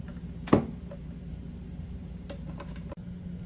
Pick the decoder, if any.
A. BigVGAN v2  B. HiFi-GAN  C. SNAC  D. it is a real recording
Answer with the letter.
D